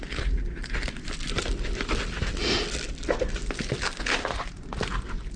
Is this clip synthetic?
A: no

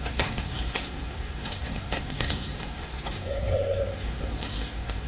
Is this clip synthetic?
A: yes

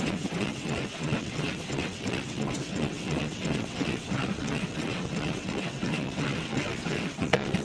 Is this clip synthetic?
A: yes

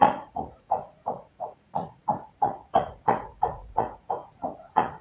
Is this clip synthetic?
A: yes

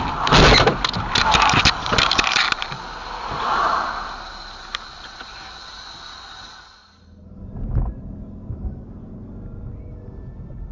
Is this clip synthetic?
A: no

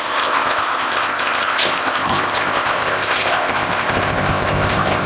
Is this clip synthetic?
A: yes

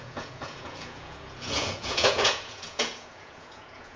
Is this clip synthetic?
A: yes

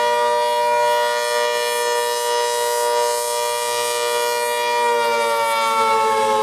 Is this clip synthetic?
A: no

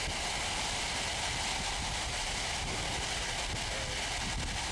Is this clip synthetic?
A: no